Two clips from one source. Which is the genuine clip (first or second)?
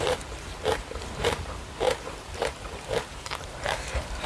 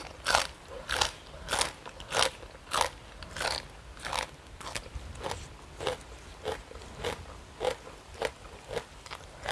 second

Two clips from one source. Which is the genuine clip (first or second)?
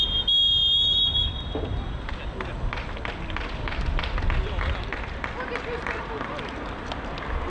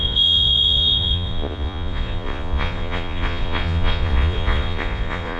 first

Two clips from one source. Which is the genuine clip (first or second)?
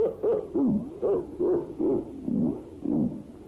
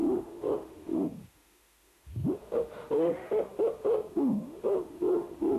first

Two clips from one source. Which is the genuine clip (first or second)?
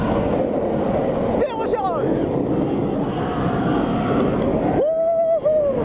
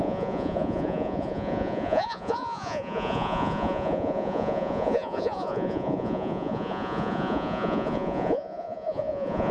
first